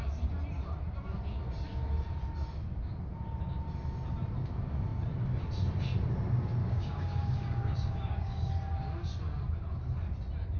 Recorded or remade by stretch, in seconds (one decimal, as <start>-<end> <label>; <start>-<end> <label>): 0.0-6.6 recorded; 6.6-8.5 remade; 8.5-10.6 recorded